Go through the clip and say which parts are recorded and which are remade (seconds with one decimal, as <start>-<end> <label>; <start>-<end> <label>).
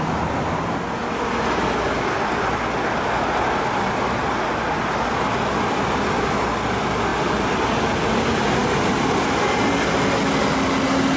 0.0-11.2 recorded